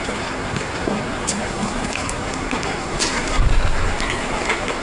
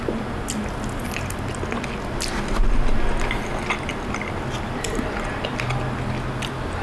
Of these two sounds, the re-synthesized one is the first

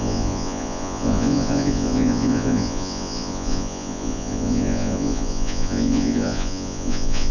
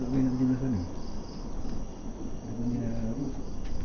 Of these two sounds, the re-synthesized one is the first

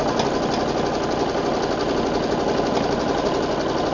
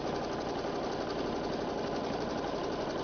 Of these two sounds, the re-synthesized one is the second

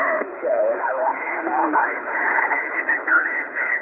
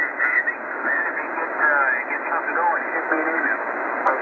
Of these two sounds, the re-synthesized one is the first